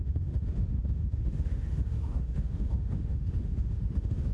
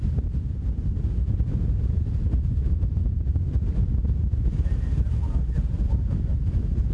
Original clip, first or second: second